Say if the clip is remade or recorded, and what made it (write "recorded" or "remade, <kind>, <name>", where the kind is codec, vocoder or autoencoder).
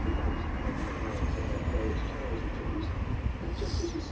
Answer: recorded